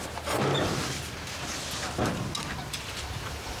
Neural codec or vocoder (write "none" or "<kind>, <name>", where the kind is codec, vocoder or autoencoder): none